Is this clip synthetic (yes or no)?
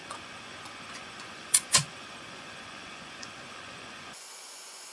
yes